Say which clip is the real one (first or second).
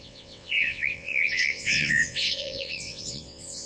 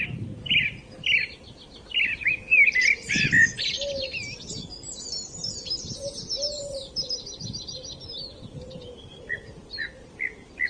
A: second